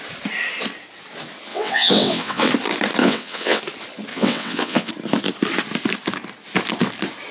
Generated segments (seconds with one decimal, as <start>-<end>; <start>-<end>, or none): 1.5-2.5; 3.0-3.6; 4.1-4.9